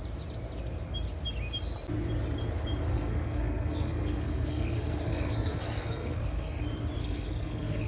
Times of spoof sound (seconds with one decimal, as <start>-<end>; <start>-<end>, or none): 2.9-6.6; 7.0-7.9